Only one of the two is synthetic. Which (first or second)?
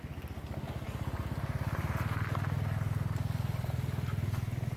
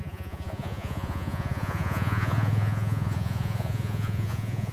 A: second